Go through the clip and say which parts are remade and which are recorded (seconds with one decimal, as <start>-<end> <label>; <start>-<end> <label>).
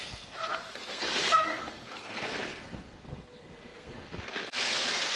0.0-5.2 remade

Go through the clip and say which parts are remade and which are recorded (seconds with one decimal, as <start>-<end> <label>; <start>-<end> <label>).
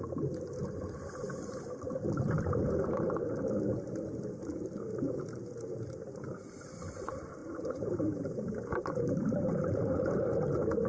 0.0-7.4 recorded; 7.4-10.1 remade; 10.1-10.9 recorded